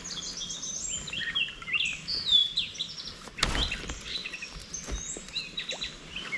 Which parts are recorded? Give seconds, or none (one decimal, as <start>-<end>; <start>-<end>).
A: 0.0-2.4; 3.4-4.2; 5.4-6.4